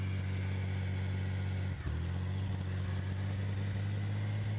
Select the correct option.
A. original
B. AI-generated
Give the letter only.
A